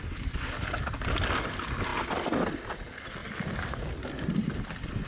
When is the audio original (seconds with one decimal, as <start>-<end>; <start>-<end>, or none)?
0.0-5.1